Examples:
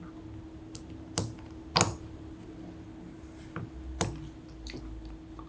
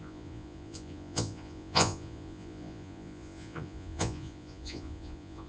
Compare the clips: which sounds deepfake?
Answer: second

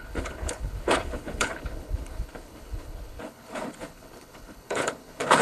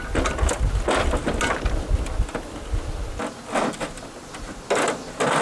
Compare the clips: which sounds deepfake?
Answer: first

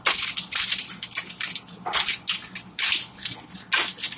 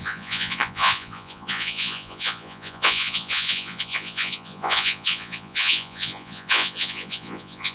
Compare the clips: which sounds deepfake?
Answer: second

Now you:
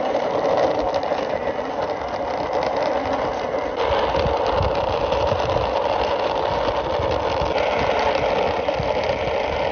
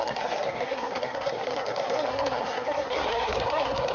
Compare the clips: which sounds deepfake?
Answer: second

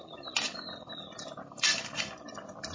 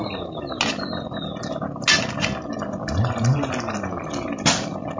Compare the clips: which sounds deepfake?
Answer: first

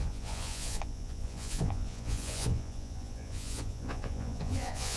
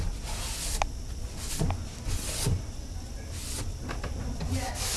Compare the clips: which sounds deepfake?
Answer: first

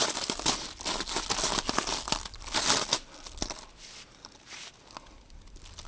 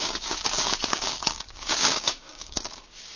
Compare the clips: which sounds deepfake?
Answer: second